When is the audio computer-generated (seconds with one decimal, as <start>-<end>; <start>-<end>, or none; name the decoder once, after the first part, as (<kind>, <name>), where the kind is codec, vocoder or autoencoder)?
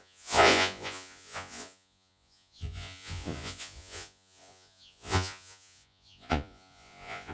0.0-7.3 (vocoder, Vocos)